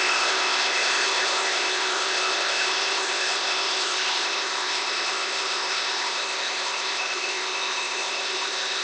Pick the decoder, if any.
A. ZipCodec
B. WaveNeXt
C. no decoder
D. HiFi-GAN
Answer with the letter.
A